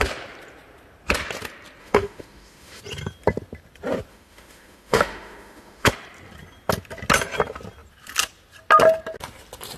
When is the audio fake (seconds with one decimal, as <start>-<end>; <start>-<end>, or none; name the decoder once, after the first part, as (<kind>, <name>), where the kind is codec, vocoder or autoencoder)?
1.8-2.8 (autoencoder, DAC-VAE); 4.1-5.9